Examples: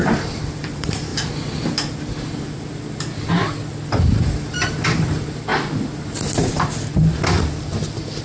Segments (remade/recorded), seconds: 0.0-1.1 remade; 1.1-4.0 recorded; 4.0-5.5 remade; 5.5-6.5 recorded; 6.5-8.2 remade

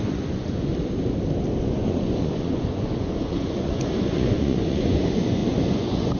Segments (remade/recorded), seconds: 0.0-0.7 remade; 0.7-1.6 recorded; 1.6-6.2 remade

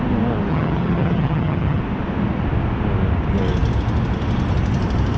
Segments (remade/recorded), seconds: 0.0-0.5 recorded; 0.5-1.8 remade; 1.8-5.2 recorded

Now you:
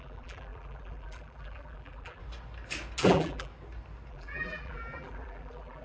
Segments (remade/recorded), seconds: 0.0-2.2 remade; 2.2-3.0 recorded; 3.0-3.5 remade; 3.5-4.1 recorded; 4.1-5.8 remade